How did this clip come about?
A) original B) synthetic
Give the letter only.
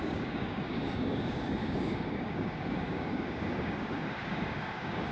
B